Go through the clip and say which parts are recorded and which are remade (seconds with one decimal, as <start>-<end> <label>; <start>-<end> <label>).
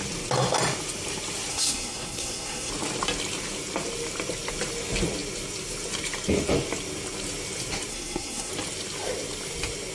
0.0-1.5 recorded; 1.5-2.7 remade; 2.7-7.9 recorded; 7.9-8.5 remade; 8.5-9.9 recorded